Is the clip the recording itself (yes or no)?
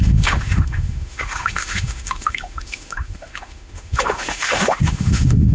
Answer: no